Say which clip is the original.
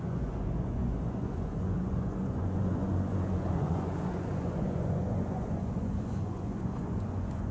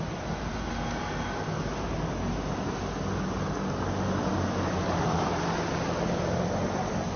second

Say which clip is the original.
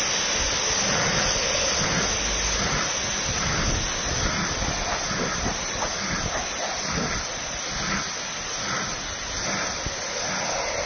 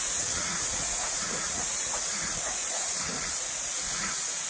first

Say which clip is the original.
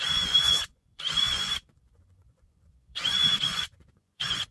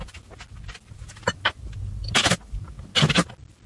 second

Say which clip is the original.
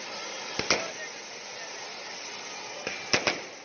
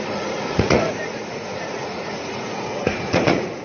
first